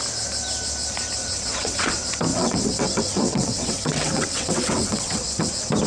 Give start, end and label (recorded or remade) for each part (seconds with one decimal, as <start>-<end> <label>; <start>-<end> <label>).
0.0-1.2 recorded; 1.2-1.9 remade; 1.9-2.3 recorded; 2.3-5.5 remade; 5.5-5.9 recorded

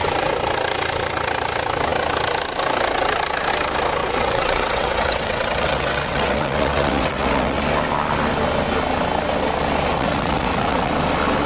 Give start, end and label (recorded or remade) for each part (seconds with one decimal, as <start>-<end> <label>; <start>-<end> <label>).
0.0-4.0 recorded; 4.0-7.6 remade; 7.6-9.9 recorded; 9.9-10.9 remade; 10.9-11.5 recorded

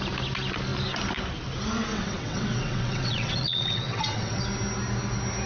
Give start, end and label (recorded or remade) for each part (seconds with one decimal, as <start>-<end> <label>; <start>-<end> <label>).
0.0-1.9 recorded; 1.9-4.4 remade; 4.4-5.5 recorded

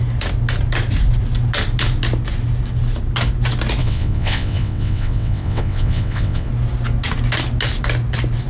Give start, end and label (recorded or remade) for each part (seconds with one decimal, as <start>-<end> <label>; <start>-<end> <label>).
0.0-3.8 recorded; 3.8-6.5 remade; 6.5-8.5 recorded